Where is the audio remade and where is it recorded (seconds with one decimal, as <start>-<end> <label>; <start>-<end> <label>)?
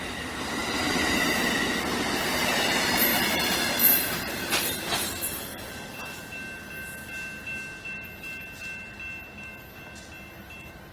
0.0-10.9 recorded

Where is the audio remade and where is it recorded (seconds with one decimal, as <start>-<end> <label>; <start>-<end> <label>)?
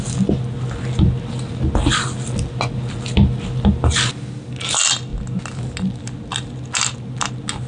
0.0-7.7 recorded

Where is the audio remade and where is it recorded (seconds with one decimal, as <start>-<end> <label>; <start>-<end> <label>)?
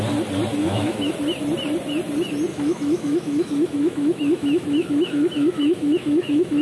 0.0-0.6 recorded; 0.6-1.1 remade; 1.1-2.5 recorded; 2.5-6.6 remade